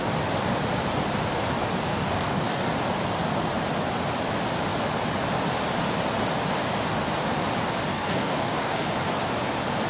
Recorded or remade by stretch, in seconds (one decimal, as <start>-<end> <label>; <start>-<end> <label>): 0.0-1.9 recorded; 1.9-2.7 remade; 2.7-7.9 recorded; 7.9-8.9 remade; 8.9-9.9 recorded